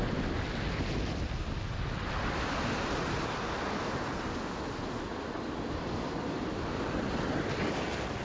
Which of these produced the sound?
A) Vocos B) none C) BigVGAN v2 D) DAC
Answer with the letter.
B